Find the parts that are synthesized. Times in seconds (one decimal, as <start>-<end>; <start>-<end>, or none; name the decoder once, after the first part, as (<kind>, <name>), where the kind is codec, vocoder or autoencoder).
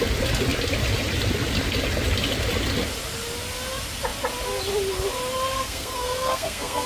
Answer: 5.5-6.9 (codec, SNAC)